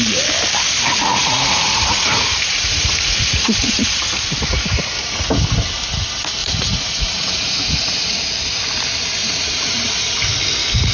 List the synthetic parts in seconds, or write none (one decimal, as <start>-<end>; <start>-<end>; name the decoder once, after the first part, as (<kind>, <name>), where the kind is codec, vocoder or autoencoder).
1.2-4.0 (vocoder, Vocos); 6.4-8.2; 9.2-9.8